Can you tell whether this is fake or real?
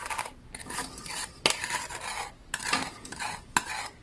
real